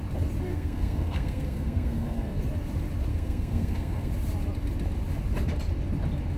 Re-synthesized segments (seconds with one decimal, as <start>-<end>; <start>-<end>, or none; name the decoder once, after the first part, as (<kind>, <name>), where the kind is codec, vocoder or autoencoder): 0.5-2.4 (codec, SNAC); 3.1-4.1